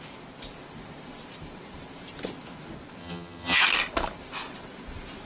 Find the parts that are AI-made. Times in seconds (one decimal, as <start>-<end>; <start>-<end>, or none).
3.0-3.6